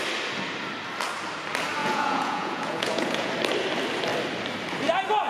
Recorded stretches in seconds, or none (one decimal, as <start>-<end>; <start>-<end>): 0.0-1.8; 3.3-5.3